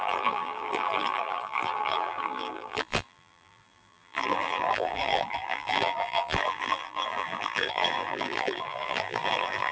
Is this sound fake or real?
fake